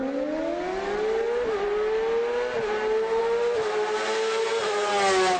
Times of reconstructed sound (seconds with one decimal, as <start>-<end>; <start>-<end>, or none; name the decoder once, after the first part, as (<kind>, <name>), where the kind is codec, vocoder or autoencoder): none